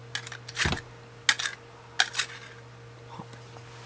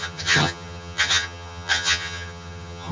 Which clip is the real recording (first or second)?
first